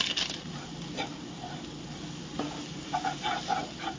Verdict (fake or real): real